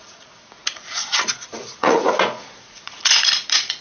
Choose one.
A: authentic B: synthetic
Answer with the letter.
B